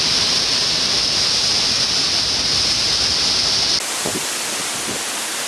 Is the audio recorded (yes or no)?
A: yes